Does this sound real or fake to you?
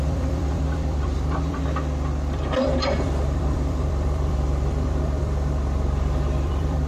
fake